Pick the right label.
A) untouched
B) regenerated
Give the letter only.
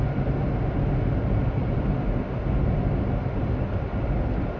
A